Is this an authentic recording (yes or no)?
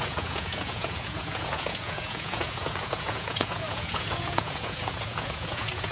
no